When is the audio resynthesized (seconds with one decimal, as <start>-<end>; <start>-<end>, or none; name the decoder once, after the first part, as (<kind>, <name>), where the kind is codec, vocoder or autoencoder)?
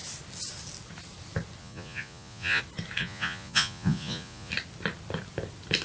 1.6-2.6 (vocoder, Vocos); 3.0-4.5